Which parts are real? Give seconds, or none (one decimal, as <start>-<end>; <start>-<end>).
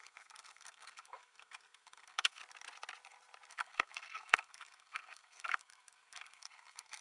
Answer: 2.4-3.5